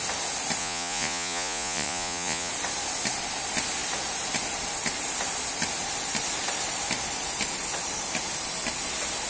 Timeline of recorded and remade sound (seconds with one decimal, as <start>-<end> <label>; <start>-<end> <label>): 0.0-0.6 recorded; 0.6-2.5 remade; 2.5-9.3 recorded